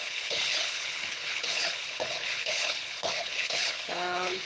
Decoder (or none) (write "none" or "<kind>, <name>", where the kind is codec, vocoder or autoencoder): codec, HILCodec